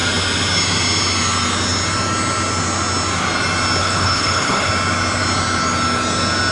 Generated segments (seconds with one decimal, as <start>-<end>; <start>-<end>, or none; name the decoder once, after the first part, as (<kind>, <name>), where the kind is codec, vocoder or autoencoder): 3.8-4.7 (codec, HILCodec)